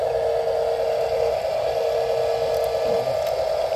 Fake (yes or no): no